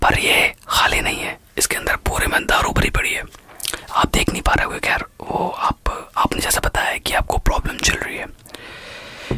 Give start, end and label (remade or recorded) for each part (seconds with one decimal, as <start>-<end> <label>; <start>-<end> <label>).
0.0-3.6 recorded; 3.6-4.7 remade; 4.7-9.4 recorded